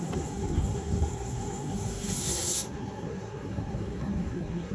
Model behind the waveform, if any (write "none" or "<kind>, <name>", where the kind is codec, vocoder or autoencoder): codec, SNAC